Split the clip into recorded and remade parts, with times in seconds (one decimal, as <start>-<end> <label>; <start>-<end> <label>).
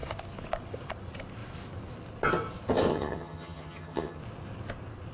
0.0-2.9 recorded; 2.9-4.2 remade; 4.2-5.1 recorded